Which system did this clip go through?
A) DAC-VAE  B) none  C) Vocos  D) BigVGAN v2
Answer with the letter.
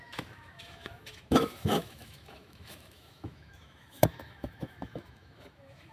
A